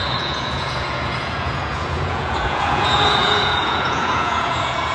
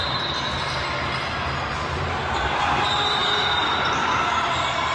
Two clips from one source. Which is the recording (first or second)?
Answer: second